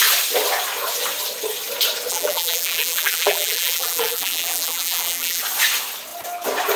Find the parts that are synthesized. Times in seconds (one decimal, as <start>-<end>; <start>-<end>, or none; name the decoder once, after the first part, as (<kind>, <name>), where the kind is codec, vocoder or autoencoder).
2.1-5.4 (vocoder, BigVGAN v2)

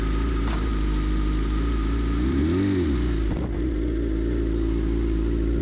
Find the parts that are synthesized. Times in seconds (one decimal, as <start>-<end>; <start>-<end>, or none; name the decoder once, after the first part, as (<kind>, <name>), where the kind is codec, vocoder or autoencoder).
0.0-2.4 (vocoder, BigVGAN v2)